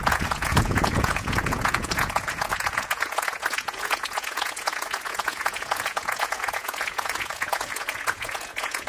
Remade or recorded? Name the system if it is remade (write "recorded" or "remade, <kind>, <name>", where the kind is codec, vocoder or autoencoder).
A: remade, vocoder, Vocos